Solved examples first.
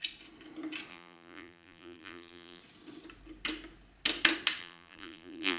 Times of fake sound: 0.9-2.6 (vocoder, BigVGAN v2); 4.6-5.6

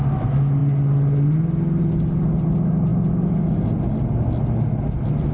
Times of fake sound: none

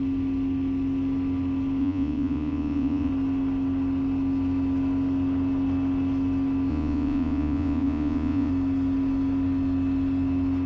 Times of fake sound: 1.8-3.1 (vocoder, Vocos); 6.7-8.5

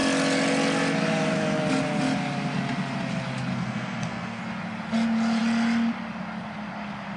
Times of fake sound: 3.5-4.4 (codec, SNAC)

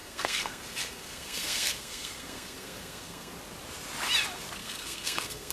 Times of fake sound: 0.0-3.3 (codec, SNAC); 4.6-5.5